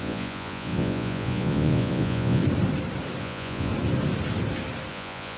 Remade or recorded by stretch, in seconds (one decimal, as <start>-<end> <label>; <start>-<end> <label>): 0.0-2.4 remade; 2.4-3.2 recorded; 3.2-3.7 remade; 3.7-4.9 recorded; 4.9-5.4 remade